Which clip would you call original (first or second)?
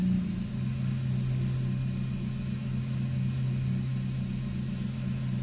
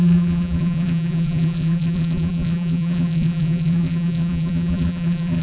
first